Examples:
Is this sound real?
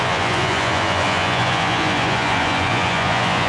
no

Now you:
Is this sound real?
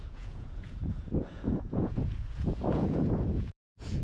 no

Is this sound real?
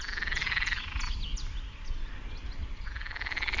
yes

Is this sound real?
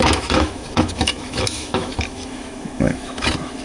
no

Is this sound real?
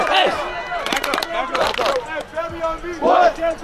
yes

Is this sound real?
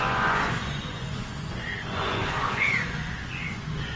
no